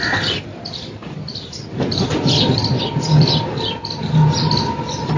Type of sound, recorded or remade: recorded